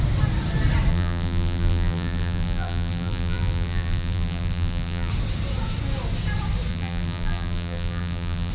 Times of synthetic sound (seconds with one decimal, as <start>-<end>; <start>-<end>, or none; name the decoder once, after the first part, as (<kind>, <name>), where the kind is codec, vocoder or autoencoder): 0.9-5.1 (vocoder, BigVGAN v2); 6.7-8.5